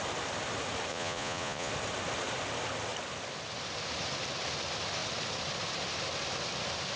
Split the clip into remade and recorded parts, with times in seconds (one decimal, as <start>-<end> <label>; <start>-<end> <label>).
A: 0.0-0.9 recorded; 0.9-1.7 remade; 1.7-7.0 recorded